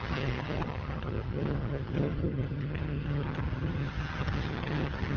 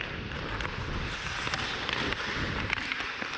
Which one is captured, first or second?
second